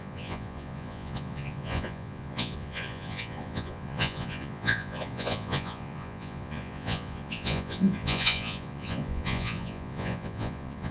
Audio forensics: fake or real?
fake